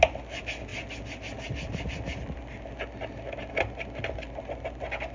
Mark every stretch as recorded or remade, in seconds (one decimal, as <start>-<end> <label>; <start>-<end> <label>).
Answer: 0.0-5.1 recorded